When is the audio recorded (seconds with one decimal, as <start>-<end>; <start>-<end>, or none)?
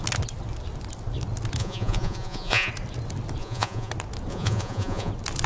0.0-1.6; 2.7-3.4; 3.9-4.3; 5.1-5.5